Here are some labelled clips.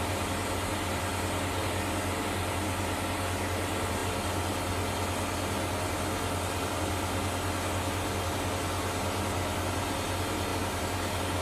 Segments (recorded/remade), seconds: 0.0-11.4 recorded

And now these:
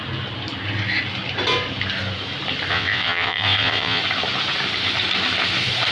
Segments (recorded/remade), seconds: 0.0-2.7 recorded; 2.7-4.0 remade; 4.0-5.9 recorded

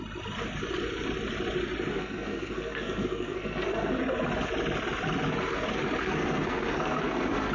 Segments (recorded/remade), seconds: 0.0-1.9 recorded; 1.9-4.0 remade; 4.0-6.0 recorded; 6.0-7.5 remade